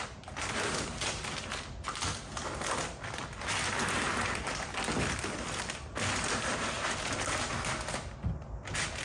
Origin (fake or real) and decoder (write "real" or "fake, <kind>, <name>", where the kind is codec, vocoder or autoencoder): real